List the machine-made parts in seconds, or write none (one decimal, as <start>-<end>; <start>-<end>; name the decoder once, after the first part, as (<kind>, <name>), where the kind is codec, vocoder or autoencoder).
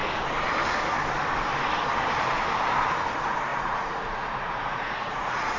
3.5-5.6 (vocoder, Vocos)